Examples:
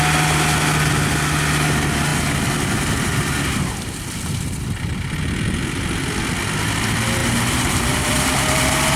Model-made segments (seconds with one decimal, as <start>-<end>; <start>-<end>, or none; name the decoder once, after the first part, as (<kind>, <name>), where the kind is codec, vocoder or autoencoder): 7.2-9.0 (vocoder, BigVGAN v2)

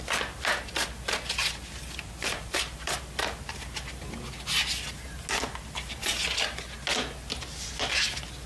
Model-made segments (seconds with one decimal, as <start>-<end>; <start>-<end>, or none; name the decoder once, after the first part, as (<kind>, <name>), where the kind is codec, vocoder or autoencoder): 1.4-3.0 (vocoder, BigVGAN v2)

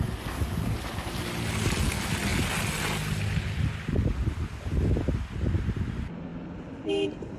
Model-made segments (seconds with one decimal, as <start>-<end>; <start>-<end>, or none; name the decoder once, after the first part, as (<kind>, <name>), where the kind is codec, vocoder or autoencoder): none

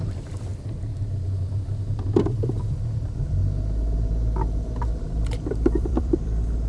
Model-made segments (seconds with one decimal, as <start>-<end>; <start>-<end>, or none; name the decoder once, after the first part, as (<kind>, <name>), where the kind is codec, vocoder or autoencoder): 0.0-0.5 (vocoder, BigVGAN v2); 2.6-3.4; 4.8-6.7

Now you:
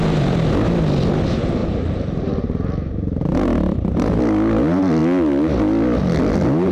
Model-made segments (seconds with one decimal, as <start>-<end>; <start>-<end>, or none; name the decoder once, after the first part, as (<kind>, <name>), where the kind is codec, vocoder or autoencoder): 1.6-4.2 (vocoder, BigVGAN v2)

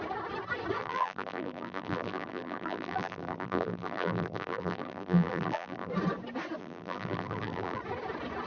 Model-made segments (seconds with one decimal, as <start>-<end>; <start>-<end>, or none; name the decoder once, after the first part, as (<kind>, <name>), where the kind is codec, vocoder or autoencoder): 0.8-5.9 (vocoder, BigVGAN v2); 6.6-7.8